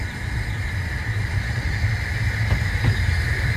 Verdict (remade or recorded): remade